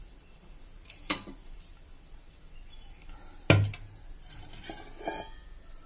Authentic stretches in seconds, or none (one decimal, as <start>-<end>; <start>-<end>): 3.1-5.9